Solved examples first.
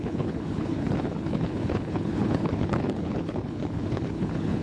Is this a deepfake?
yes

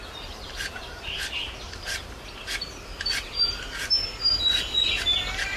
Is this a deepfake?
no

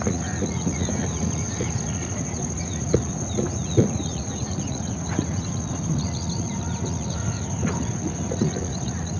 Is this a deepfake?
yes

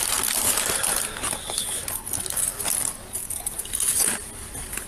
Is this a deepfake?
no